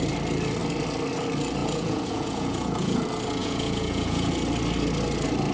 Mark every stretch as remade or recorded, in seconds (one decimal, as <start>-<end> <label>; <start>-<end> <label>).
0.0-1.6 recorded; 1.6-3.0 remade; 3.0-3.4 recorded; 3.4-4.3 remade; 4.3-5.5 recorded